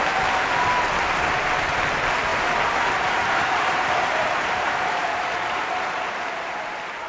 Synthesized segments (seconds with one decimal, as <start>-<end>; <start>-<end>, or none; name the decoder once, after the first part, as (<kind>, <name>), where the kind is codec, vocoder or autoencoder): 2.3-6.6 (vocoder, BigVGAN v2)